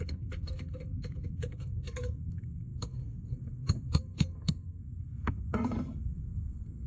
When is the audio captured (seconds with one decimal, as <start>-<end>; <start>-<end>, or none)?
none